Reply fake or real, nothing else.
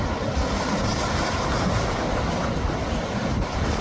real